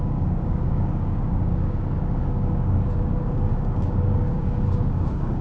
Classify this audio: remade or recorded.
remade